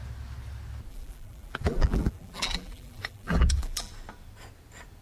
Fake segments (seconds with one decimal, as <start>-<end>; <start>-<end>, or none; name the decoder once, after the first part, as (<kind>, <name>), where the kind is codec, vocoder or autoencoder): 0.9-3.9 (vocoder, BigVGAN v2)

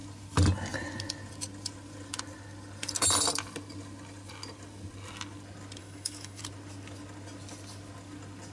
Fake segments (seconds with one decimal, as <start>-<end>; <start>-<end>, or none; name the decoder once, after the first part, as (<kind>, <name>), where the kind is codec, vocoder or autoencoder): 5.8-6.4 (autoencoder, DAC-VAE)

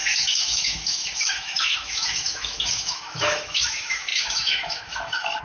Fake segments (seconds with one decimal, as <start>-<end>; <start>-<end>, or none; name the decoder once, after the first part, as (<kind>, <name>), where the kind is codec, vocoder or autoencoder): 0.0-5.4 (autoencoder, DAC-VAE)

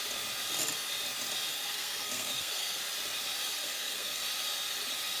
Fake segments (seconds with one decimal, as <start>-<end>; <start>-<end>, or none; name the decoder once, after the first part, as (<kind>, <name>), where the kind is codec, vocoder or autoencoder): 1.5-2.8 (codec, SNAC); 3.5-4.2

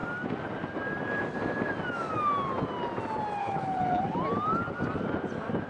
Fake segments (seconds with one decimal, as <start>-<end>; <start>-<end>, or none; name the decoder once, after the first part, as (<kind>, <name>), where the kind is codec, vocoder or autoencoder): 3.4-4.0 (codec, HILCodec)